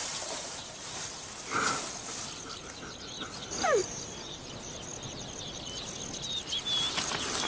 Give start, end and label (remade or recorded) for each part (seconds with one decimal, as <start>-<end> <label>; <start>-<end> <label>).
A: 0.0-1.3 remade; 1.3-3.8 recorded; 3.8-4.5 remade; 4.5-7.5 recorded

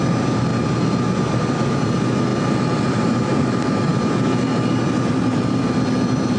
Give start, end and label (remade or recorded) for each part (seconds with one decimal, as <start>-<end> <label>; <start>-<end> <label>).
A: 0.0-0.5 remade; 0.5-1.3 recorded; 1.3-6.4 remade

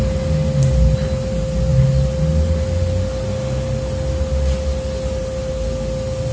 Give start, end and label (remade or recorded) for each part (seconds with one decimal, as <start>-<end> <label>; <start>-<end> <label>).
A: 0.0-6.3 recorded

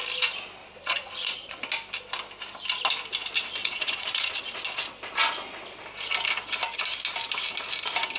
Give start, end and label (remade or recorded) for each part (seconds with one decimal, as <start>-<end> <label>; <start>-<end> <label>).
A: 0.0-0.6 recorded; 0.6-1.6 remade; 1.6-3.6 recorded; 3.6-4.6 remade; 4.6-8.2 recorded

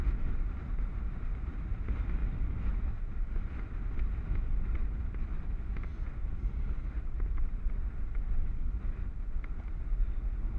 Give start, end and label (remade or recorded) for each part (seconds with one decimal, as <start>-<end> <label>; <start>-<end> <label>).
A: 0.0-4.4 recorded; 4.4-5.3 remade; 5.3-10.6 recorded

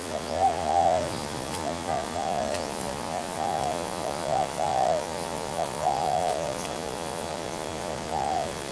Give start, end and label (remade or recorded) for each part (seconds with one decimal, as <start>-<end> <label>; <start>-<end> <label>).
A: 0.0-8.7 remade

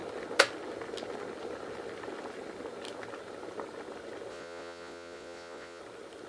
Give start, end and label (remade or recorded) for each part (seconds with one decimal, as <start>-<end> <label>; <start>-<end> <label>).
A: 0.0-4.3 recorded; 4.3-5.8 remade; 5.8-6.3 recorded

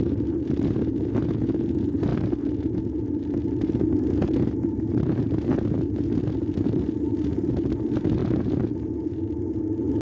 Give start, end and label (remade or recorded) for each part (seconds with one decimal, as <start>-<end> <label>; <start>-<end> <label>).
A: 0.0-10.0 recorded